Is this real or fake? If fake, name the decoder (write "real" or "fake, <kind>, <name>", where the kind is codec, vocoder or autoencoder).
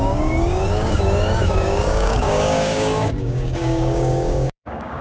fake, codec, DAC